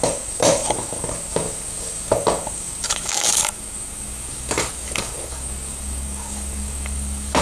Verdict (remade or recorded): remade